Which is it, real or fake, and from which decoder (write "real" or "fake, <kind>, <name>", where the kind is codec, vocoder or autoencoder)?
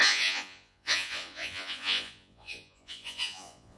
fake, vocoder, Vocos